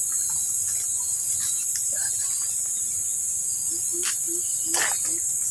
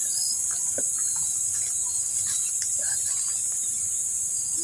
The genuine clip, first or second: first